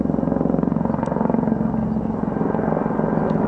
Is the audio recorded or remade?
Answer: recorded